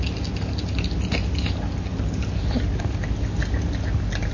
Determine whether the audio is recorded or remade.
recorded